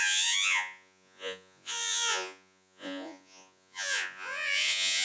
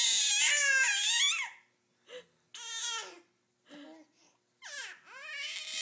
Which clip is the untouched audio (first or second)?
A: second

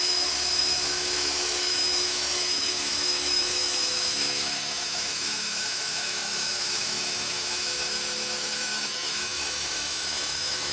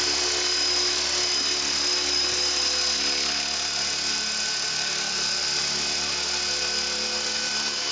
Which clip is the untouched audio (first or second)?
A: second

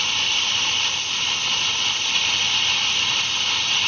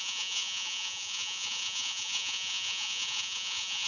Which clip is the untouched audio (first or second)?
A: first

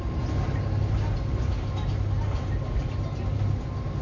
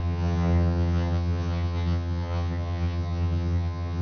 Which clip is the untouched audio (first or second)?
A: first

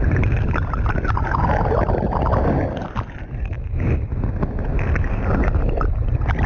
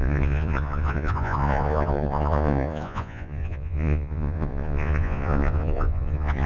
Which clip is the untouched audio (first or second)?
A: first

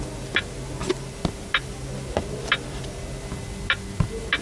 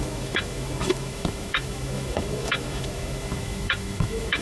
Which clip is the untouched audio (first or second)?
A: first